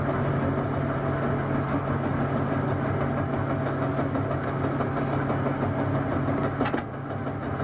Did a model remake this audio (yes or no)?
no